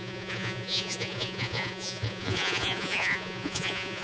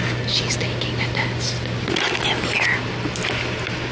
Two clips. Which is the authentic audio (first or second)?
second